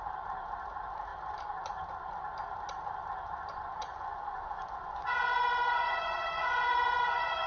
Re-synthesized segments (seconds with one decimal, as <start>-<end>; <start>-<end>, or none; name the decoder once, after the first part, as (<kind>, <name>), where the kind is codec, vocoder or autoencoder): 3.5-7.5 (vocoder, Vocos)